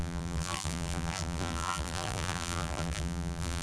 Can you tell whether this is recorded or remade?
remade